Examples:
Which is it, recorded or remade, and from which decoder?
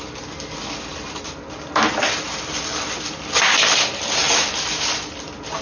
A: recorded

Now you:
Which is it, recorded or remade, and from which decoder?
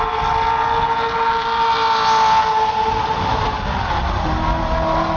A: recorded